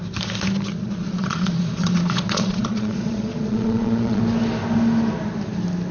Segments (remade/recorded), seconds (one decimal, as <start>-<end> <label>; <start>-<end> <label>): 0.0-0.7 recorded; 0.7-4.2 remade; 4.2-5.9 recorded